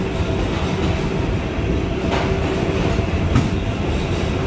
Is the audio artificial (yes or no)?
no